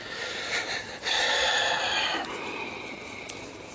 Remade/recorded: recorded